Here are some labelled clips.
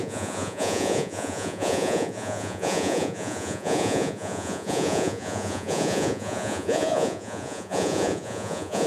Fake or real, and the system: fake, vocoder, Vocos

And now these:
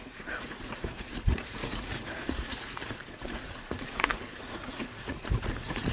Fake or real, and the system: fake, vocoder, Vocos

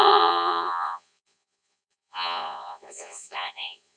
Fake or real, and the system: fake, vocoder, Vocos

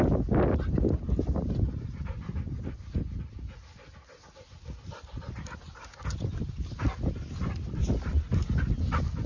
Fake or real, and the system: real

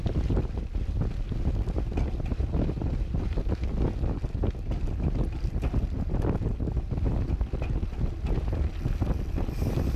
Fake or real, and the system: real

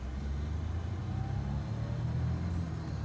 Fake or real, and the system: real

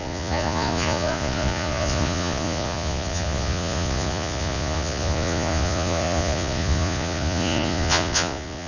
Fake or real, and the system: fake, vocoder, Vocos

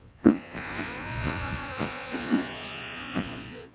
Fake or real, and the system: fake, vocoder, Vocos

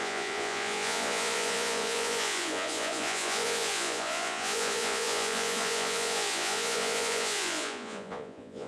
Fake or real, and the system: fake, vocoder, Vocos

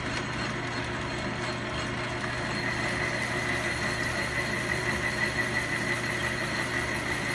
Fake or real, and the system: real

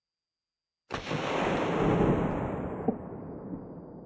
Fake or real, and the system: real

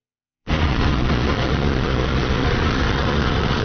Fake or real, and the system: fake, vocoder, Vocos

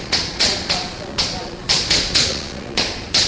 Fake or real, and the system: fake, vocoder, Vocos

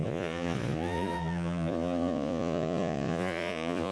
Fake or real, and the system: fake, vocoder, Vocos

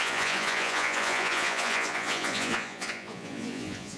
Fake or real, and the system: fake, vocoder, Vocos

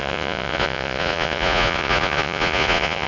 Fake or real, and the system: fake, vocoder, Vocos